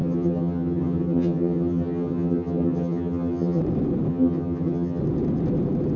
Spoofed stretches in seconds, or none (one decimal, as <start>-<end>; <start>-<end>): 0.0-3.6; 4.1-5.0